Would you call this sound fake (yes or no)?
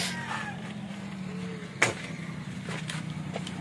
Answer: no